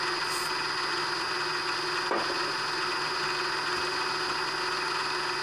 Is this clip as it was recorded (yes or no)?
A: yes